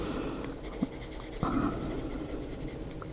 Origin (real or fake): real